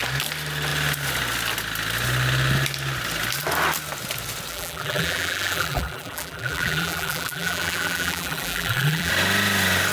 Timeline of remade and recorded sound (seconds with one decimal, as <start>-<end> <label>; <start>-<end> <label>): 0.0-4.5 recorded; 4.5-9.1 remade; 9.1-9.9 recorded